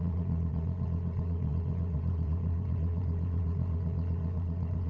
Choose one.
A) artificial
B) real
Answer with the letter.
A